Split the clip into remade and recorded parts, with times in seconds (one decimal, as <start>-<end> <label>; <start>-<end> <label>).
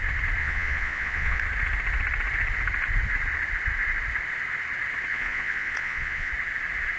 0.0-0.4 recorded; 0.4-1.4 remade; 1.4-5.1 recorded; 5.1-6.3 remade; 6.3-7.0 recorded